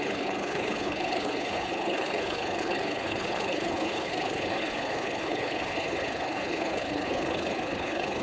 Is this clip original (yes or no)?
no